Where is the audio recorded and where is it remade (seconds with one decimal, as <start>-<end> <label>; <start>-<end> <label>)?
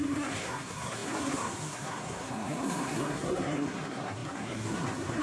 0.0-5.2 remade